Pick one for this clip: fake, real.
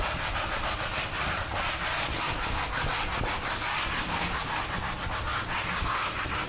real